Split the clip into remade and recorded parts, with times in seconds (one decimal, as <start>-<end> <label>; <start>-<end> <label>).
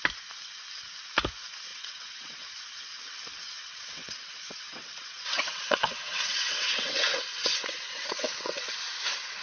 0.0-1.7 recorded; 1.7-2.4 remade; 2.4-3.6 recorded; 3.6-8.7 remade; 8.7-9.4 recorded